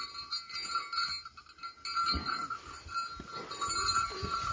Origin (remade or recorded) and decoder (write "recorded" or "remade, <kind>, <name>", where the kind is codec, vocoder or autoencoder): recorded